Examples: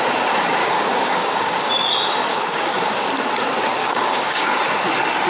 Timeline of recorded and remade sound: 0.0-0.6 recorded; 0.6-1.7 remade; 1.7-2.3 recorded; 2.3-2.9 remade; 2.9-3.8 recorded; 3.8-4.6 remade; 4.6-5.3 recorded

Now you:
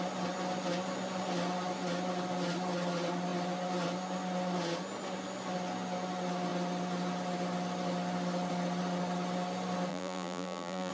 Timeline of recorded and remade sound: 0.0-9.9 recorded; 9.9-10.9 remade

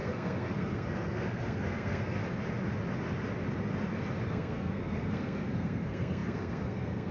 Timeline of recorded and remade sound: 0.0-2.2 remade; 2.2-4.3 recorded; 4.3-7.1 remade

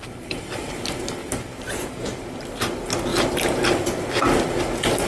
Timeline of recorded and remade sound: 0.0-1.2 recorded; 1.2-2.3 remade; 2.3-3.1 recorded; 3.1-3.7 remade; 3.7-5.1 recorded

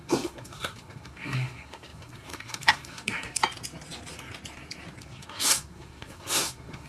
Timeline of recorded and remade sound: 0.0-3.4 remade; 3.4-5.0 recorded; 5.0-6.9 remade

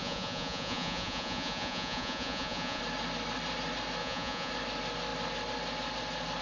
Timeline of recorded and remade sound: 0.0-2.8 remade; 2.8-4.0 recorded; 4.0-4.5 remade; 4.5-6.4 recorded